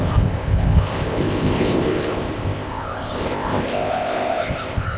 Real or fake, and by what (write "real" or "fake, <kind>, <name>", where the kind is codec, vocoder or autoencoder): fake, codec, ZipCodec